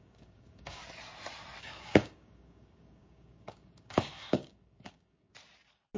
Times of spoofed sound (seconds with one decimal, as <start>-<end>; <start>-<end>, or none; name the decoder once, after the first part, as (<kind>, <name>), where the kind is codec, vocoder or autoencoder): 0.0-0.8 (codec, DAC); 1.6-5.3